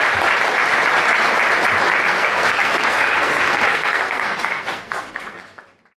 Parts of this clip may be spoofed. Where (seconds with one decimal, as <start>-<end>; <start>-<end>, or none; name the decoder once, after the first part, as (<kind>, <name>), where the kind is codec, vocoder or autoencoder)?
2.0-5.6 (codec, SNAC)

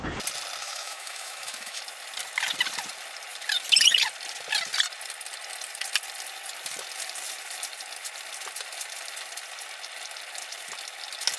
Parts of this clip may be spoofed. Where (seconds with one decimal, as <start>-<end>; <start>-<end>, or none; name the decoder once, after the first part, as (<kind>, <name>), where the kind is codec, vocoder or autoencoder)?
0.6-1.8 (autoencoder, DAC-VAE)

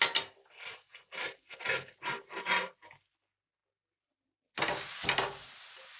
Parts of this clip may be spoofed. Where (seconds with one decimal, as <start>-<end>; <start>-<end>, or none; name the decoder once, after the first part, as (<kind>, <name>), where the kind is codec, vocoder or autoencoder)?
none

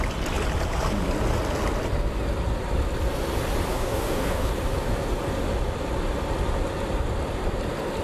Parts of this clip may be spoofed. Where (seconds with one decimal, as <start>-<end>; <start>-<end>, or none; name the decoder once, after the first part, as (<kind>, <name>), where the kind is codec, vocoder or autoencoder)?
3.7-4.5 (codec, DAC)

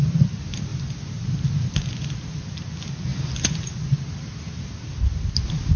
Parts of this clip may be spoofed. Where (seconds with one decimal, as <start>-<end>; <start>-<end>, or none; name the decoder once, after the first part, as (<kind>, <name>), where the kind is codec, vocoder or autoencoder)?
0.7-1.5 (vocoder, BigVGAN v2)

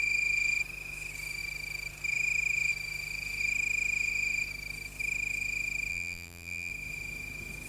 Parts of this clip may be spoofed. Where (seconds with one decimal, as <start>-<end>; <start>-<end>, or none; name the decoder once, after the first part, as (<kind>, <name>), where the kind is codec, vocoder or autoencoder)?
5.9-6.7 (vocoder, BigVGAN v2)